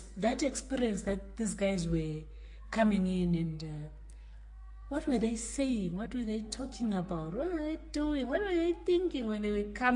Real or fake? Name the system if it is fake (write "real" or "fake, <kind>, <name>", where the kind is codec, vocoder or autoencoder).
fake, codec, SNAC